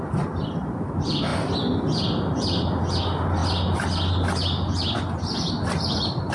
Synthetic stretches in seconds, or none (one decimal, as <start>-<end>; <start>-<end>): none